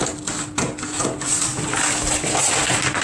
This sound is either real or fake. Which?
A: real